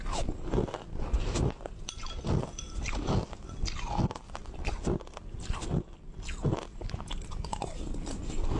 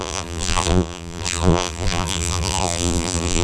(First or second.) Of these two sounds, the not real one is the second